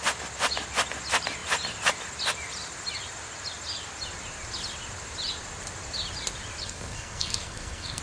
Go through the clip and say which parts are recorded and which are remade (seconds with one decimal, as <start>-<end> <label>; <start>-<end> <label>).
0.0-6.6 recorded; 6.6-8.0 remade